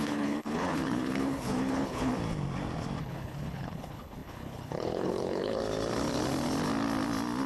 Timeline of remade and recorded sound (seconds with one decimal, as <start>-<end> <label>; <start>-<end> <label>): 0.0-2.1 remade; 2.1-3.0 recorded; 3.0-5.6 remade; 5.6-7.5 recorded